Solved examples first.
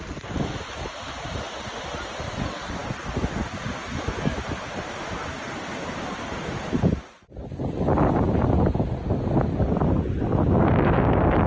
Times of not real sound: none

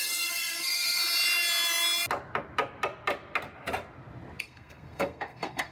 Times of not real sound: 0.0-1.0 (codec, SNAC); 4.4-5.7

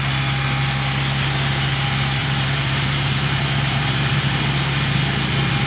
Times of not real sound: 2.2-4.4 (vocoder, BigVGAN v2)